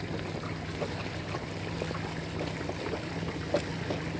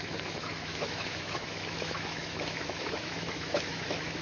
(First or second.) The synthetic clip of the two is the second